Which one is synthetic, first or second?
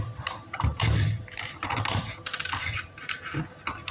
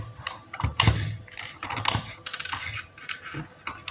first